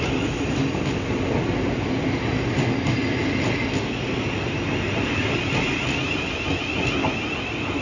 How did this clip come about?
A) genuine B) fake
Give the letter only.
A